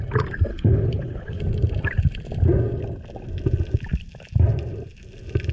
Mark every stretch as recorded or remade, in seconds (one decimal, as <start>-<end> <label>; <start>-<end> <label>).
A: 0.0-0.5 recorded; 0.5-1.4 remade; 1.4-5.5 recorded